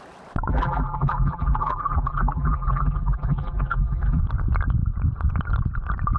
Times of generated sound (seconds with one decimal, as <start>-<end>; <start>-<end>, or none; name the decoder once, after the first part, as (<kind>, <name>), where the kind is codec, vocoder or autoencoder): 0.5-4.2 (vocoder, BigVGAN v2)